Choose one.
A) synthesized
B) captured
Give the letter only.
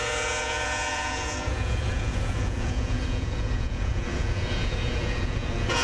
A